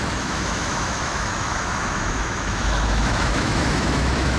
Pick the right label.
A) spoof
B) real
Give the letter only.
A